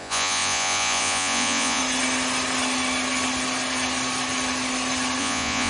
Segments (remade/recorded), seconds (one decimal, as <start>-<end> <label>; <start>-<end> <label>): 0.0-1.8 remade; 1.8-5.2 recorded; 5.2-5.7 remade